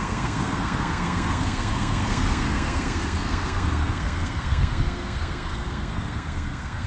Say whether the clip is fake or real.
fake